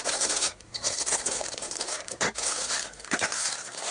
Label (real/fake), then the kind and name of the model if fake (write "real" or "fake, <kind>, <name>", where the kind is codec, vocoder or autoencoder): fake, codec, SNAC